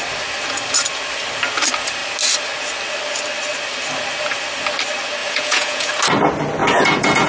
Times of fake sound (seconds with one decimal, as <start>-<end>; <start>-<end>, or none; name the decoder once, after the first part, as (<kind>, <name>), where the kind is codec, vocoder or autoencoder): 5.2-5.9 (vocoder, Vocos); 6.6-7.3